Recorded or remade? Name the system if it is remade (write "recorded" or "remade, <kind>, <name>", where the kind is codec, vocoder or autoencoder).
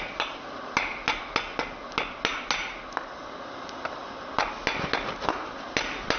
recorded